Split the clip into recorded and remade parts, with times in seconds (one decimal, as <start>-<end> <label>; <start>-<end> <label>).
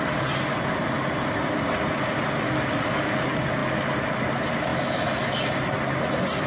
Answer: 0.0-6.5 recorded